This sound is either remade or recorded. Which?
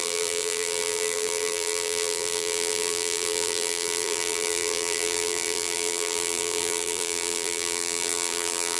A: remade